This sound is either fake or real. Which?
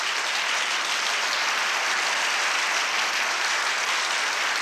real